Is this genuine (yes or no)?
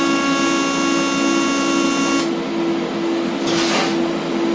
yes